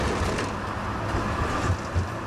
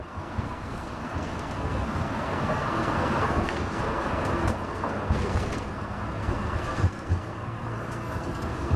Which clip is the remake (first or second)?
second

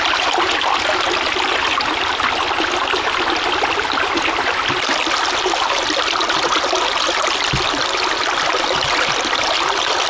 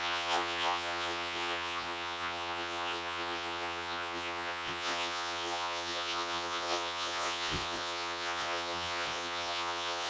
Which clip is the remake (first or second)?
second